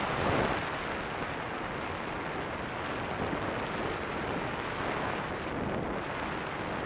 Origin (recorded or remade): recorded